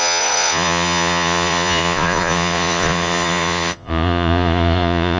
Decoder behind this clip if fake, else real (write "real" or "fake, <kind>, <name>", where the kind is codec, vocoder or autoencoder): fake, vocoder, Vocos